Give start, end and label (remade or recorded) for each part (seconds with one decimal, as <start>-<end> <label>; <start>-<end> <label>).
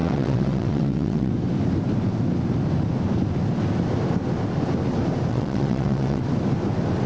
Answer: 0.0-1.3 remade; 1.3-5.3 recorded; 5.3-6.2 remade; 6.2-7.1 recorded